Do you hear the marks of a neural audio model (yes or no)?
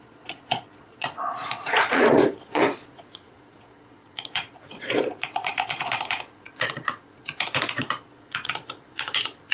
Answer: yes